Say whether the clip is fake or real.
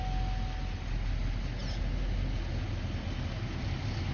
real